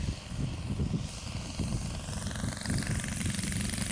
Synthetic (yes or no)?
no